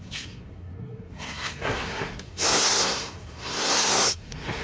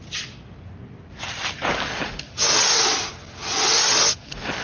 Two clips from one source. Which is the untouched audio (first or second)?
second